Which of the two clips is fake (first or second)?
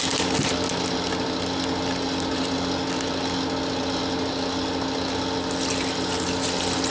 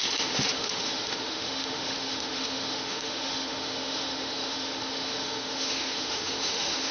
second